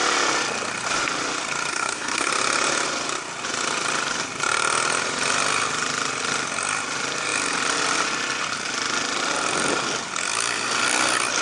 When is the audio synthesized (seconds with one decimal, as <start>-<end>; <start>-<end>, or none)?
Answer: 1.7-2.3